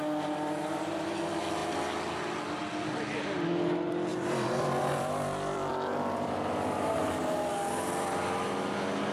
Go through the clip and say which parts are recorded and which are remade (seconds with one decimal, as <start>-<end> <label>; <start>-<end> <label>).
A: 0.0-4.1 recorded; 4.1-5.7 remade; 5.7-9.1 recorded